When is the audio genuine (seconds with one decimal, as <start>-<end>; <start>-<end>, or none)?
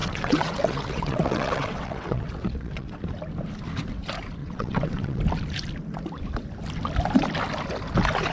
3.0-4.4; 5.2-8.3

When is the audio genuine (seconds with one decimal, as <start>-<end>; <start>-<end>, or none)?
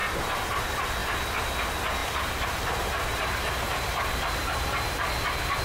0.0-2.0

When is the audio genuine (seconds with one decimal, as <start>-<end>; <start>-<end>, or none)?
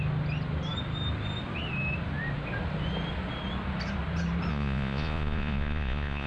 0.0-4.5